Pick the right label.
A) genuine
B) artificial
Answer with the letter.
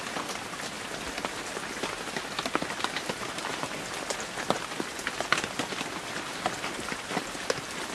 A